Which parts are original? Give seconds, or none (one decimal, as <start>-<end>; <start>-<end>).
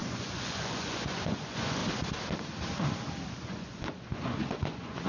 1.8-3.3